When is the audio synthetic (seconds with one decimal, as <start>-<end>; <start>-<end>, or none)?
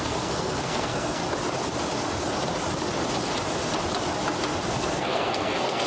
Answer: 0.0-1.2; 4.7-5.9